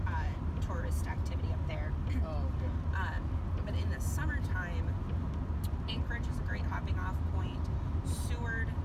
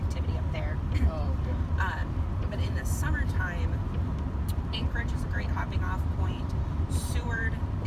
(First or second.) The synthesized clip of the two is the second